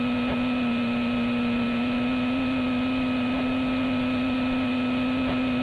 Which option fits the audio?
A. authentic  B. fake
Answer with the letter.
A